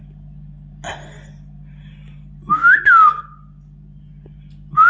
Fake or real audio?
real